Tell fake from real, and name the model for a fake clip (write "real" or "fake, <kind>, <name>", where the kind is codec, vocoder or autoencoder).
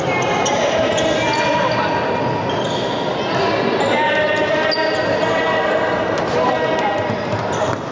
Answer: real